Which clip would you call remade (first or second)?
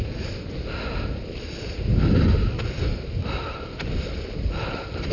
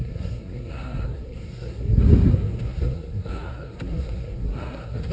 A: second